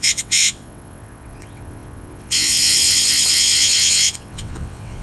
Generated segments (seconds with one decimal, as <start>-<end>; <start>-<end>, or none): 0.0-5.0